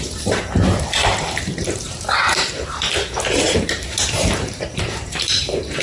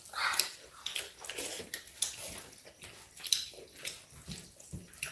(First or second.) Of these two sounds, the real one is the second